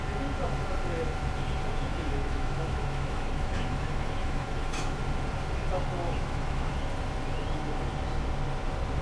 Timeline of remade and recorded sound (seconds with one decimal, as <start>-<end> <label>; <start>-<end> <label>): 0.0-1.9 recorded; 1.9-5.0 remade; 5.0-6.0 recorded; 6.0-6.7 remade; 6.7-9.0 recorded